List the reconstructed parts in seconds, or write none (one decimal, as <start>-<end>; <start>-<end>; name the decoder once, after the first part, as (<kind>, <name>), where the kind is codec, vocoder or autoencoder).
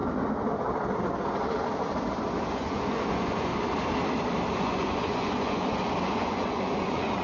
2.5-3.5 (vocoder, Vocos); 4.5-7.2